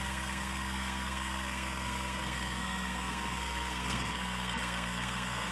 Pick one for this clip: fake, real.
fake